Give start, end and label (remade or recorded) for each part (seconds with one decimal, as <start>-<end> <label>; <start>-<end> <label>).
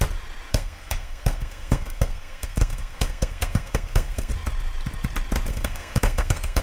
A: 0.0-0.5 recorded; 0.5-4.3 remade; 4.3-5.5 recorded; 5.5-6.6 remade